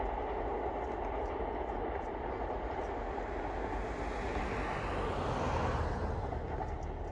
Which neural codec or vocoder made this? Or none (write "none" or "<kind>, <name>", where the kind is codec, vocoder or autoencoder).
none